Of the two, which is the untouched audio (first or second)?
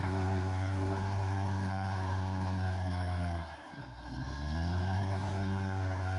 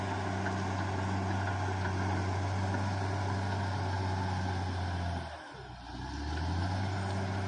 second